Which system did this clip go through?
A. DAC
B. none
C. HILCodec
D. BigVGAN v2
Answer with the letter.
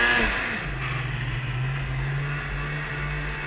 B